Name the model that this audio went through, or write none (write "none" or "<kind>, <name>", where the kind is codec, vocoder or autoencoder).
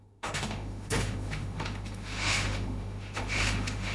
autoencoder, DAC-VAE